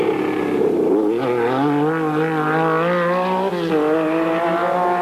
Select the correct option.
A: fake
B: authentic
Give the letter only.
B